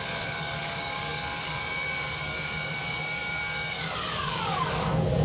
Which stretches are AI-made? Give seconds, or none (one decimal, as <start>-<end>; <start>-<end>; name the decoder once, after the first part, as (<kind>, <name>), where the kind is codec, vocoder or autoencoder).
0.0-5.2 (codec, DAC)